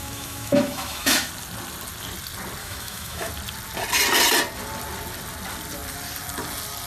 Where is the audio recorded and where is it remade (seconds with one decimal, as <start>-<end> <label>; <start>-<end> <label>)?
0.0-1.3 remade; 1.3-2.6 recorded; 2.6-3.3 remade; 3.3-6.9 recorded